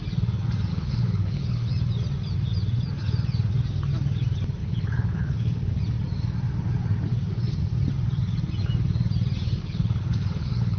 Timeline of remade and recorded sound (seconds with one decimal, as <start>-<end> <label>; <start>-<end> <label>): 0.0-0.7 recorded; 0.7-1.7 remade; 1.7-4.6 recorded; 4.6-5.8 remade; 5.8-9.6 recorded; 9.6-10.8 remade